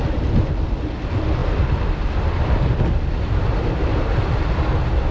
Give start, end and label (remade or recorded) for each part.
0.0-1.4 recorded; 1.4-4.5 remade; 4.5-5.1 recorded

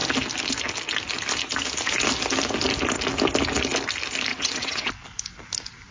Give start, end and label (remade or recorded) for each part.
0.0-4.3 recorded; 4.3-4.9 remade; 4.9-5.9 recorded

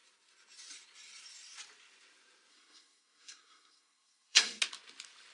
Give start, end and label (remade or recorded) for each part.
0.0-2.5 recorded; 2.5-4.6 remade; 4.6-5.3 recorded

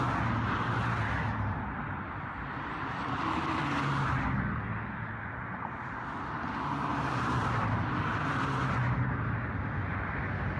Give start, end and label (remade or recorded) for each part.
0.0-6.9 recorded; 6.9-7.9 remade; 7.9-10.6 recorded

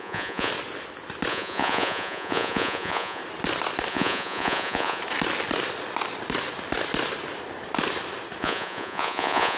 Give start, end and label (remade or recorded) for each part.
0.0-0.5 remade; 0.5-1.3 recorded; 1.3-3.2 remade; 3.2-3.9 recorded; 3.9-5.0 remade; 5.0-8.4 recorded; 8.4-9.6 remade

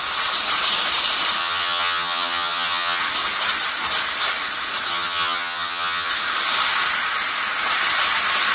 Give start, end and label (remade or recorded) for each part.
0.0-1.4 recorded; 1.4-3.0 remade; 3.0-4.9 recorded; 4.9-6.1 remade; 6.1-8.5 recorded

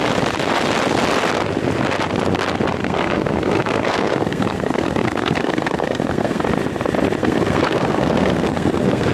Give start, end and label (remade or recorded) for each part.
0.0-2.8 recorded; 2.8-6.4 remade; 6.4-7.2 recorded; 7.2-9.1 remade